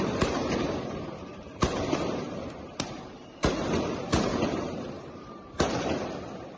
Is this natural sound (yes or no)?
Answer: no